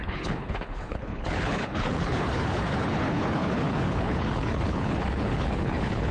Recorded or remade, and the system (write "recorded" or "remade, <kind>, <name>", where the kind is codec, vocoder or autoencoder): remade, codec, HILCodec